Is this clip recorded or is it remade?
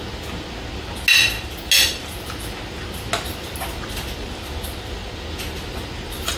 recorded